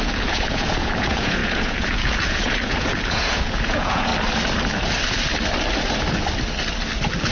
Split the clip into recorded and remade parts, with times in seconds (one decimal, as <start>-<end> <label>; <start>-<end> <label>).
0.0-4.1 remade; 4.1-7.3 recorded